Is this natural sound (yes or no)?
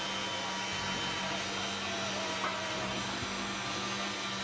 yes